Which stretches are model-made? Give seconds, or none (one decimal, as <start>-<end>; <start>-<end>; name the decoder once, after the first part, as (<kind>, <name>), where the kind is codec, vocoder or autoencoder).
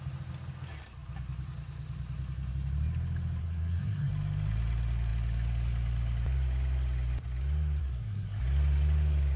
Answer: 3.4-4.1 (codec, SNAC); 7.8-8.4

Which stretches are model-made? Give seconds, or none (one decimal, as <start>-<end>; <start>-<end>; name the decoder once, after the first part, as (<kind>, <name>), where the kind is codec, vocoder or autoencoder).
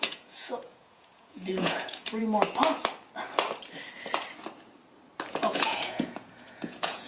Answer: 0.0-2.2 (vocoder, Vocos); 5.3-7.1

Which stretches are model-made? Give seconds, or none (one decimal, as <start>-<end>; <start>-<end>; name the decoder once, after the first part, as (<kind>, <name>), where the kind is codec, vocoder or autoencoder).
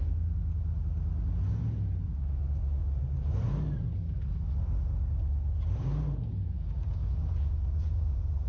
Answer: 7.0-8.5 (vocoder, Vocos)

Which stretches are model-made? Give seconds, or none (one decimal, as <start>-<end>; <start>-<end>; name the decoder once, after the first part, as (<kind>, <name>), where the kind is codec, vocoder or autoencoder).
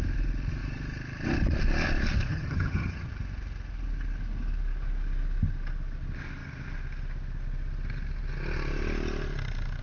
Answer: 2.3-3.1 (vocoder, HiFi-GAN)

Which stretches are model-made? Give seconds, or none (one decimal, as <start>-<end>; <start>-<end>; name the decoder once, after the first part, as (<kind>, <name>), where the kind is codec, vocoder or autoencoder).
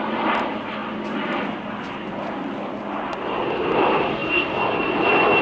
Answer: none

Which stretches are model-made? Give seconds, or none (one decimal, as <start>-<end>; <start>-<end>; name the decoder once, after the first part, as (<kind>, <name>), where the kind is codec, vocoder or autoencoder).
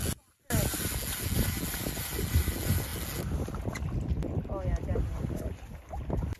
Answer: none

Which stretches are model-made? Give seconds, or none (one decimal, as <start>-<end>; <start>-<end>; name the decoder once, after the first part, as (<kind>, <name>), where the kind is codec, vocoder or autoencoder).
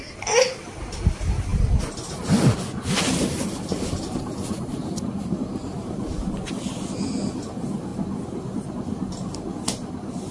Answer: none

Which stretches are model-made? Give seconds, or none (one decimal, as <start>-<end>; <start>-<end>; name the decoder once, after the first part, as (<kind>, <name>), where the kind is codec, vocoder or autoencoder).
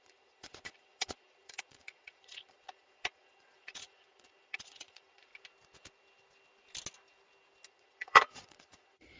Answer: 0.0-5.3 (vocoder, Vocos); 7.7-9.2